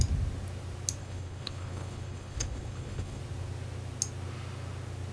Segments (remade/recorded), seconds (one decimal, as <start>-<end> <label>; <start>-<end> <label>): 0.0-1.0 recorded; 1.0-3.2 remade; 3.2-5.1 recorded